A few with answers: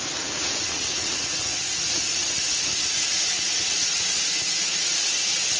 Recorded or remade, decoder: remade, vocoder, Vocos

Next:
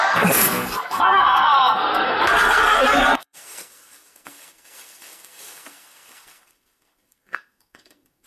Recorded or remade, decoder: remade, codec, SNAC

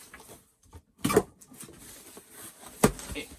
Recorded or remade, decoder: recorded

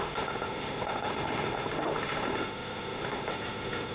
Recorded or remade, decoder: remade, autoencoder, DAC-VAE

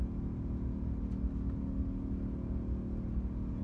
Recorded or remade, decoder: recorded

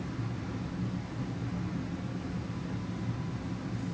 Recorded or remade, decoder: recorded